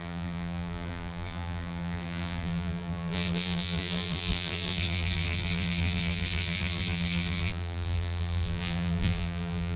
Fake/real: fake